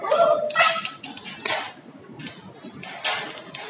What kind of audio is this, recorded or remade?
recorded